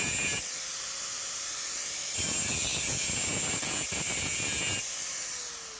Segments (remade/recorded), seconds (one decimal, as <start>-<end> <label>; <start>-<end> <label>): 0.0-5.8 recorded